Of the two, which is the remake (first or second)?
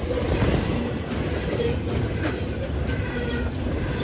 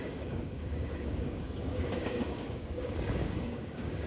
second